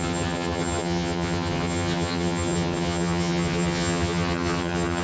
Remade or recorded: remade